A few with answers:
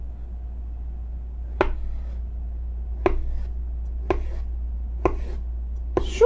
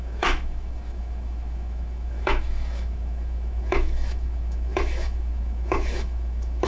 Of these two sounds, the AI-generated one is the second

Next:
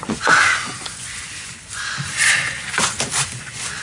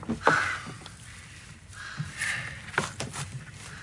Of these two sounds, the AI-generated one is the first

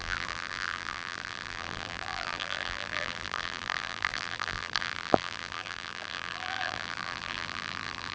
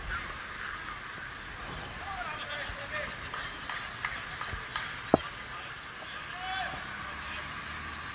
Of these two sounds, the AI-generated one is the first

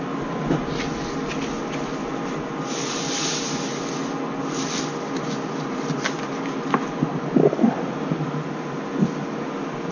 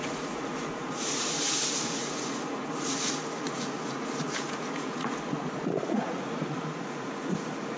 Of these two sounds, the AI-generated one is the second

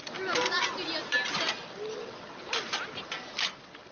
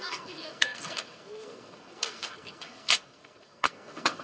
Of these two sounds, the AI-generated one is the second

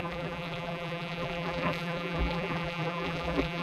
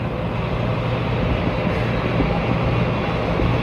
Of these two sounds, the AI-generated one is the first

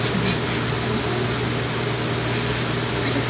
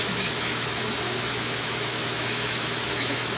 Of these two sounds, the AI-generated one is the second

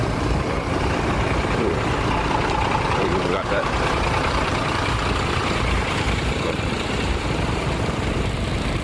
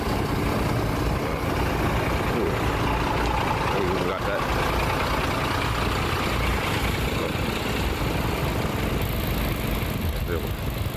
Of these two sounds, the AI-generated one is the first